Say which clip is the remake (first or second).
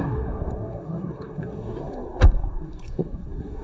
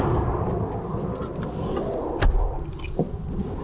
first